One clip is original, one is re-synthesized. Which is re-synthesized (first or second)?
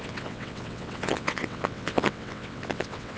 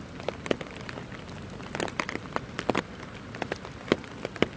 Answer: first